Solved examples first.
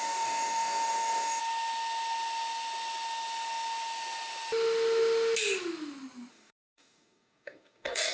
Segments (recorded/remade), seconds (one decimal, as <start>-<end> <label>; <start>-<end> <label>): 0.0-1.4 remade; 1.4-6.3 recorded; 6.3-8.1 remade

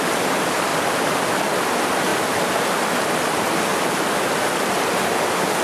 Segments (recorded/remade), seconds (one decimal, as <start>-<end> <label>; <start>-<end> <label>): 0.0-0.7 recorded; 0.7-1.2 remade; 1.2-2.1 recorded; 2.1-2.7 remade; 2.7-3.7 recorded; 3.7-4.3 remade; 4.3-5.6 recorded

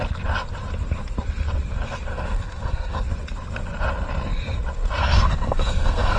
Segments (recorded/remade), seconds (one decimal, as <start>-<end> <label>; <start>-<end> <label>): 0.0-2.1 recorded; 2.1-3.0 remade; 3.0-5.0 recorded; 5.0-6.2 remade

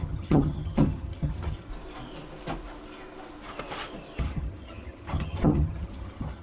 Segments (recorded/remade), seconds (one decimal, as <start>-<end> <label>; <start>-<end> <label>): 0.0-1.7 remade; 1.7-4.2 recorded; 4.2-6.4 remade

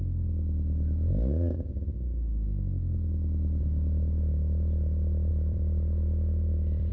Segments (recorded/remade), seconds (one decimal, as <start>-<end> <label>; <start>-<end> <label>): 0.0-5.3 recorded; 5.3-6.9 remade

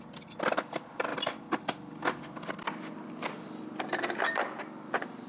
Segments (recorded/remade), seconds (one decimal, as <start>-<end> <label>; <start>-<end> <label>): 0.0-5.3 recorded